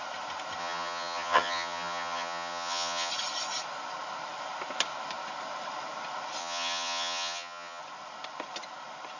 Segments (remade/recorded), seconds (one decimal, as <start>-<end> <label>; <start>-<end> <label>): 0.0-0.6 recorded; 0.6-3.1 remade; 3.1-6.4 recorded; 6.4-7.8 remade; 7.8-9.2 recorded